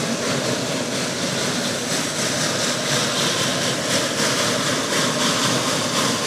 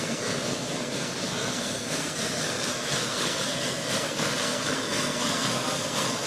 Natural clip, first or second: first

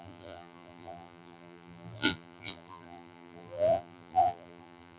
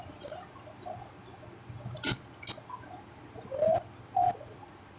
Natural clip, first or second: second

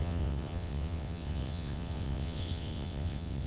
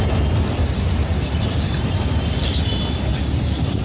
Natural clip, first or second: second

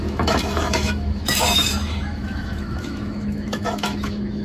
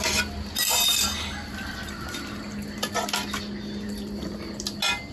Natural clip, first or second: second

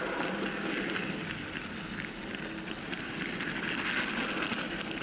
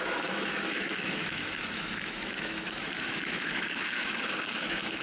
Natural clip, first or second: first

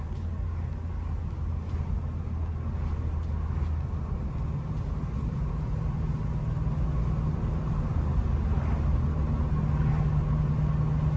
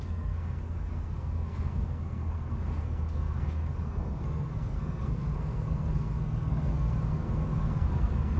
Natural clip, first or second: first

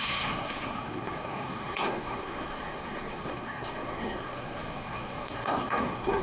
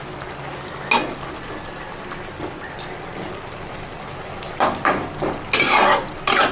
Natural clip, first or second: second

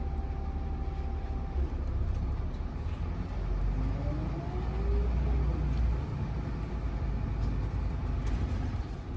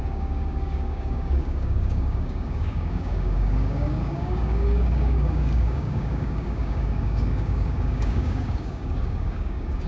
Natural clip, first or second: first